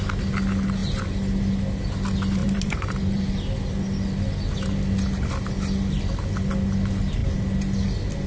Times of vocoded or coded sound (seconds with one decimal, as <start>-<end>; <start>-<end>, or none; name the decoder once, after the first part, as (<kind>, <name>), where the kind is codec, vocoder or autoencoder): 2.4-3.2 (vocoder, BigVGAN v2)